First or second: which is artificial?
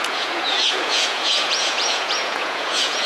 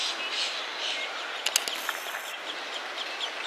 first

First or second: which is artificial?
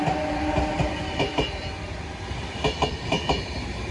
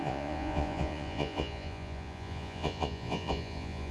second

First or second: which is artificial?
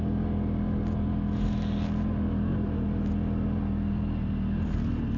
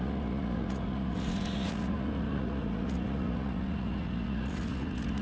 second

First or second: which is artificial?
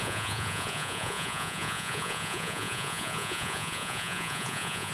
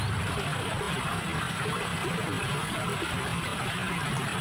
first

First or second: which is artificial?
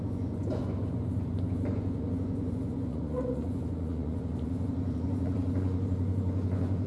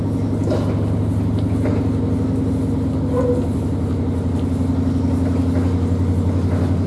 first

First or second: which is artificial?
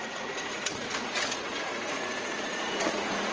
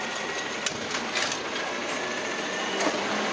first